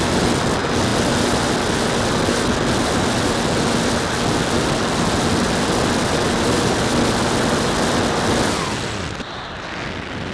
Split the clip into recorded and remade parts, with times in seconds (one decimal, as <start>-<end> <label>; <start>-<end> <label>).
0.0-10.3 recorded